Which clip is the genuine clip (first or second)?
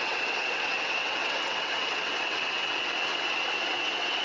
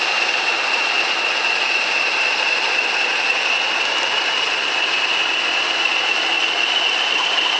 second